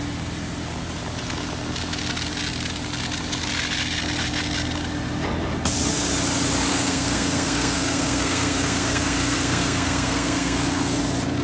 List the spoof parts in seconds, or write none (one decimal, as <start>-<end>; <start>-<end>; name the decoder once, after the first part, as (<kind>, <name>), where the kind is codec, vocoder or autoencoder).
6.7-11.0 (codec, SNAC)